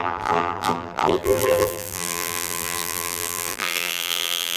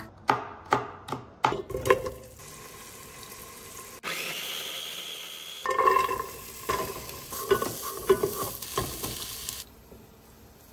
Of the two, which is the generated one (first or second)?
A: first